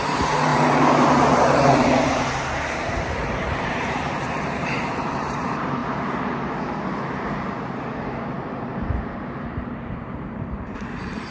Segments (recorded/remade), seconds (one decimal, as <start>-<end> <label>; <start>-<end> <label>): 0.0-5.8 remade; 5.8-8.5 recorded; 8.5-11.3 remade